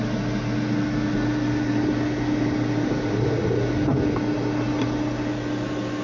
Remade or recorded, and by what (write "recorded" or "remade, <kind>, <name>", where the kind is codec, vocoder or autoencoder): recorded